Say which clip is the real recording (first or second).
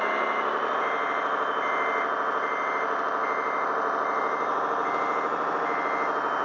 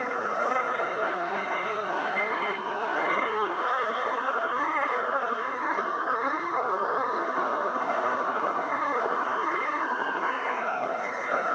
first